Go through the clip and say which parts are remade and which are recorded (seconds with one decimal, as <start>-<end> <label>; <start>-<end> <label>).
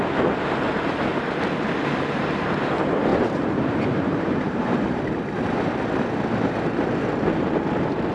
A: 0.0-3.1 recorded; 3.1-5.1 remade; 5.1-8.1 recorded